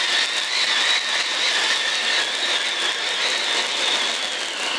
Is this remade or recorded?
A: recorded